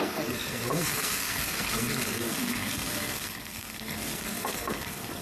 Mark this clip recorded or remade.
remade